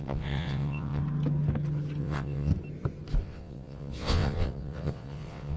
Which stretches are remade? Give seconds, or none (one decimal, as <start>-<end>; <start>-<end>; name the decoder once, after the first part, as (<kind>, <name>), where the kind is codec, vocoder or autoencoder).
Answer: 0.0-1.0 (vocoder, WaveNeXt); 2.0-2.5; 3.2-5.6

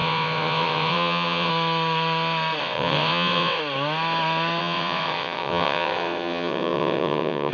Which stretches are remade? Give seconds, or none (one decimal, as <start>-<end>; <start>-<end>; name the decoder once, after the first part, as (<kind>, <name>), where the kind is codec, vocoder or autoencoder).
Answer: 0.0-1.5 (vocoder, WaveNeXt); 2.6-3.6; 4.6-7.5

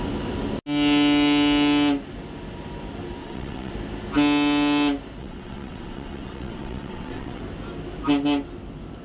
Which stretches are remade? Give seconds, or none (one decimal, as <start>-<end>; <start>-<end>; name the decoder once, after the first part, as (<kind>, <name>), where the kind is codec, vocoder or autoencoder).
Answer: 3.2-3.7 (vocoder, WaveNeXt); 5.2-7.4

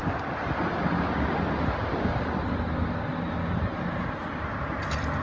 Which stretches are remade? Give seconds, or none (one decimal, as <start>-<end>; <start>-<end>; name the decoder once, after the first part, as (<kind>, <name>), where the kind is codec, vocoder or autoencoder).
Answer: none

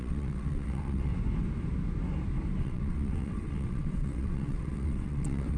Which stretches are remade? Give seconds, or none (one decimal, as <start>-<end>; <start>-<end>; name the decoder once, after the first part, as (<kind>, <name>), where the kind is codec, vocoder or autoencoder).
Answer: 0.0-1.1 (vocoder, WaveNeXt); 2.6-5.6

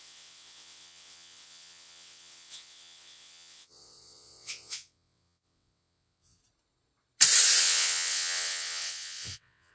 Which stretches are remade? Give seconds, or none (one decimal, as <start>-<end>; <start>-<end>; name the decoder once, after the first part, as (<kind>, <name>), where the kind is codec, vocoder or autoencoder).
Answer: 0.0-6.4 (vocoder, WaveNeXt); 7.6-9.7

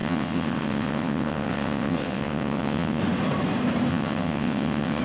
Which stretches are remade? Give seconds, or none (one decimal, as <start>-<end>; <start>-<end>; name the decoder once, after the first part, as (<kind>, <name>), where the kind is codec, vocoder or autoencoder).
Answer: 0.0-3.0 (vocoder, WaveNeXt); 3.9-5.0

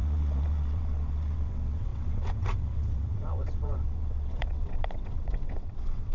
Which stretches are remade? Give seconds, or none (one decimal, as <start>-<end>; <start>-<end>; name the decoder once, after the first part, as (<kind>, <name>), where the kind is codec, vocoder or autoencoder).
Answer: 0.0-6.1 (vocoder, WaveNeXt)